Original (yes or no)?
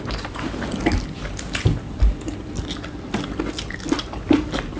yes